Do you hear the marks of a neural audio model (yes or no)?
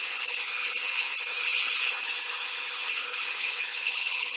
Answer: yes